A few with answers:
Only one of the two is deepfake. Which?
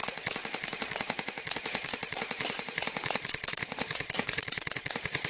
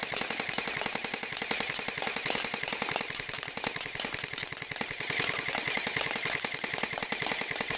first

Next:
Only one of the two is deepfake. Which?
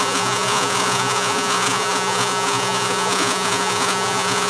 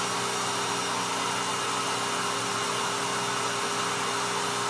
first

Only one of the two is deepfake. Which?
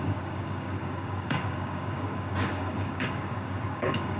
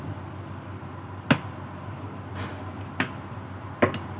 first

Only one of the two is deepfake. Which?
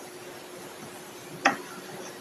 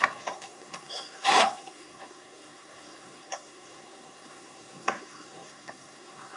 second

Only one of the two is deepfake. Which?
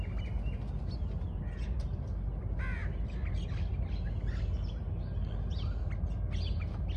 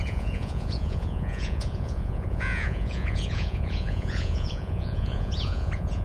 second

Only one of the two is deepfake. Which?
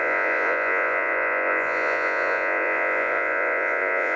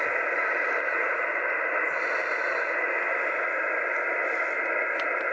first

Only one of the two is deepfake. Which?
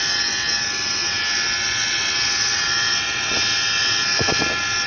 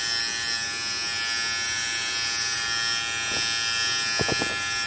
first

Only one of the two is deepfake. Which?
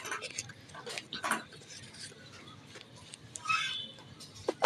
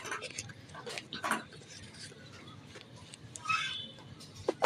second